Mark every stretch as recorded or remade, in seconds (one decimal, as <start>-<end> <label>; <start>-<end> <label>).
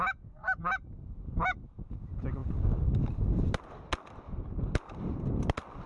0.0-5.9 recorded